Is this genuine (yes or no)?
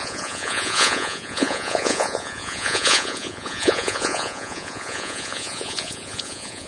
no